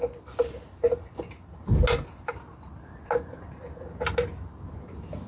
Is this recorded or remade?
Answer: recorded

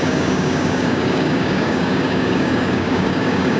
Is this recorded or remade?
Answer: remade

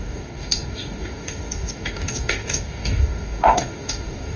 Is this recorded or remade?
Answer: remade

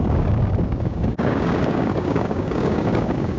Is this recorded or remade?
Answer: remade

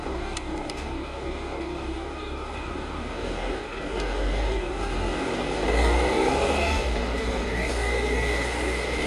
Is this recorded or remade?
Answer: remade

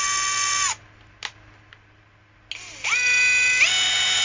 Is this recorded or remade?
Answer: recorded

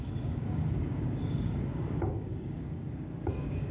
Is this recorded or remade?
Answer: remade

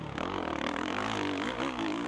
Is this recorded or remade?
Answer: remade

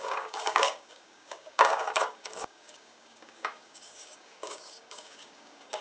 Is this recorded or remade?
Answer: remade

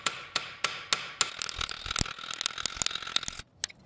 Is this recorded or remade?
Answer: recorded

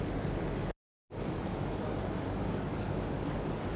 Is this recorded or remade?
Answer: remade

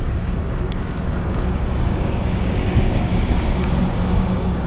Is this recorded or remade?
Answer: remade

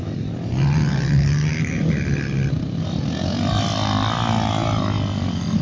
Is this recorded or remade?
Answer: recorded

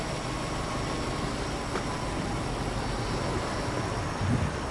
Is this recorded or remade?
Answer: recorded